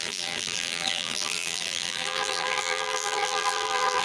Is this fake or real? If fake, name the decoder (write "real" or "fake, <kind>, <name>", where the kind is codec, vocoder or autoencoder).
fake, vocoder, BigVGAN v2